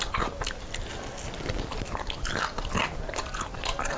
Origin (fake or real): real